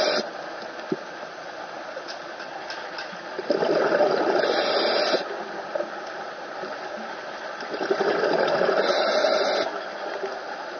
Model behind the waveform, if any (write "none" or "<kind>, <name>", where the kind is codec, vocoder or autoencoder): none